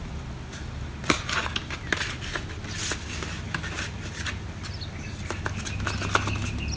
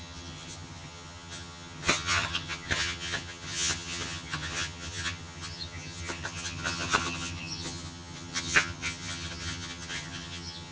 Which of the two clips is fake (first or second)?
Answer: second